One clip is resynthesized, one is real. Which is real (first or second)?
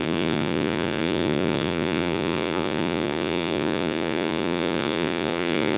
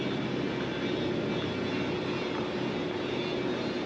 second